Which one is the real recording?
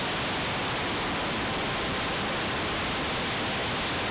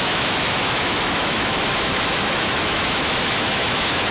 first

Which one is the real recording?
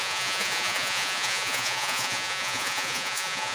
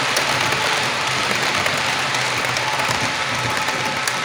second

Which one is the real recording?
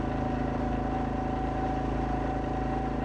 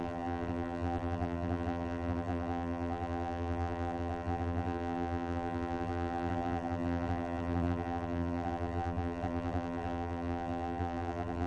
first